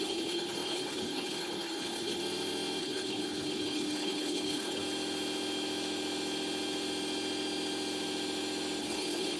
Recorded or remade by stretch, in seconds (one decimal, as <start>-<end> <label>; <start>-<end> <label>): 0.0-2.2 remade; 2.2-2.8 recorded; 2.8-4.8 remade; 4.8-8.8 recorded; 8.8-9.4 remade